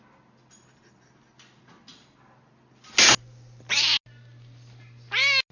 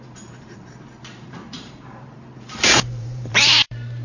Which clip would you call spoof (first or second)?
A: second